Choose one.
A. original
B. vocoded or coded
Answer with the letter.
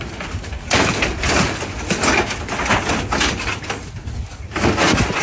A